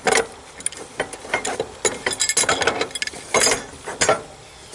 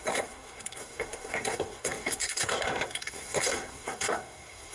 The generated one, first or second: second